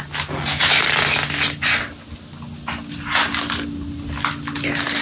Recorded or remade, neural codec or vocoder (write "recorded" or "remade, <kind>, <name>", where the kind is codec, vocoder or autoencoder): recorded